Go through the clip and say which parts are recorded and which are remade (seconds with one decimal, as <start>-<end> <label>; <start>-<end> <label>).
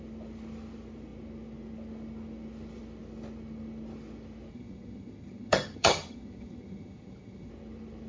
0.0-4.5 recorded; 4.5-7.5 remade; 7.5-8.1 recorded